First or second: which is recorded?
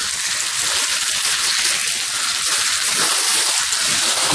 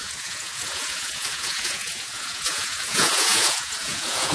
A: first